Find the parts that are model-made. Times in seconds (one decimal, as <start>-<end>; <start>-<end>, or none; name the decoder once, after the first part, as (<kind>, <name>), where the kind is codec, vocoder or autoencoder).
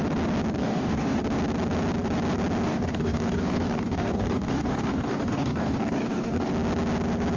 0.6-1.2 (codec, DAC); 2.7-6.5